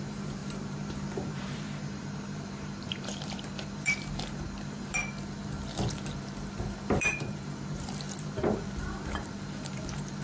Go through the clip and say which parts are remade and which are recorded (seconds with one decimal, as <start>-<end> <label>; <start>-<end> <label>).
0.0-5.0 remade; 5.0-6.8 recorded; 6.8-10.2 remade